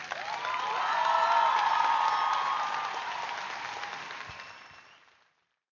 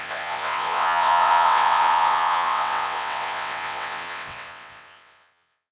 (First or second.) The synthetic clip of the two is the second